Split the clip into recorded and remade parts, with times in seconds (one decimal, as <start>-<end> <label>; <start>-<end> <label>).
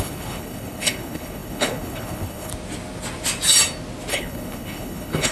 0.0-2.5 remade; 2.5-4.1 recorded; 4.1-5.3 remade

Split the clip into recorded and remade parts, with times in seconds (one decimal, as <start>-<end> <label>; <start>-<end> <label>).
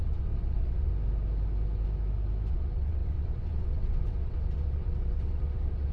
0.0-0.9 remade; 0.9-2.5 recorded; 2.5-5.9 remade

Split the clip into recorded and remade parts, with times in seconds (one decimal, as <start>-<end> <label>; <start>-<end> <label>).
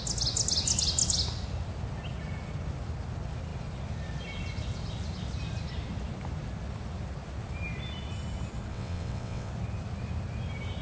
0.0-8.7 recorded; 8.7-9.5 remade; 9.5-10.8 recorded